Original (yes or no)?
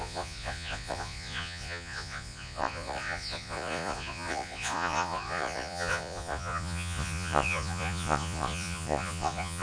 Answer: no